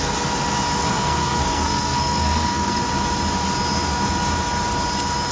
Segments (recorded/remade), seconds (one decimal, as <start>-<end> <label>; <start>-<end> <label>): 0.0-0.8 recorded; 0.8-2.8 remade; 2.8-5.3 recorded